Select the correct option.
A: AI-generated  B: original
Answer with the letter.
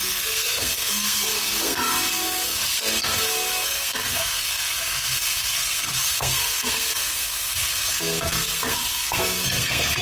A